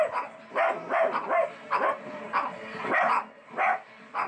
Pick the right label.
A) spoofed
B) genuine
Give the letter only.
B